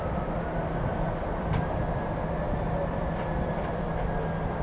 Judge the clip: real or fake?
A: real